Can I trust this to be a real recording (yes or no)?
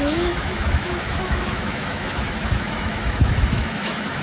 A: no